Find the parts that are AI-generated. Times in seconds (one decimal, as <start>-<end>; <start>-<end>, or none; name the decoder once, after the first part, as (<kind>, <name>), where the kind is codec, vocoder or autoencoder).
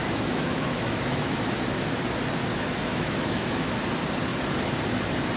0.0-1.4 (autoencoder, DAC-VAE); 2.5-3.7